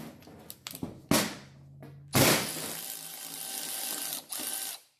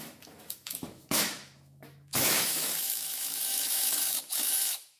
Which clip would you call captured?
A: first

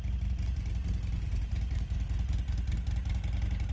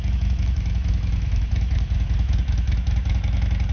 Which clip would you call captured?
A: first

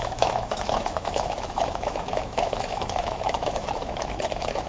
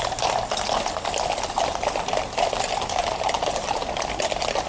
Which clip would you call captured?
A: second